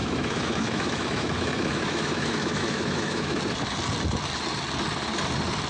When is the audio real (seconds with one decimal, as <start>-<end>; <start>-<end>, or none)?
3.4-5.7